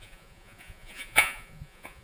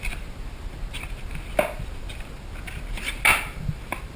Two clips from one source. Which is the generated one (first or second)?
first